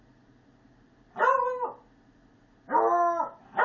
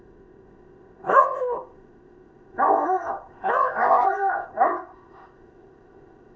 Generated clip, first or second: second